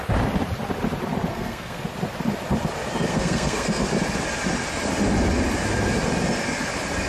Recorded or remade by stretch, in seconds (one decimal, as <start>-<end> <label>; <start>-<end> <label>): 0.0-1.3 recorded; 1.3-1.8 remade; 1.8-3.1 recorded; 3.1-3.8 remade; 3.8-7.1 recorded